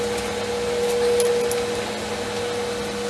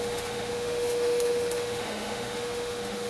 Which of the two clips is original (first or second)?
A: first